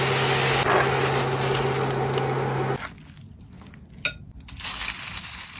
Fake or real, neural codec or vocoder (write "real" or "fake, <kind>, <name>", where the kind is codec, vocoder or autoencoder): real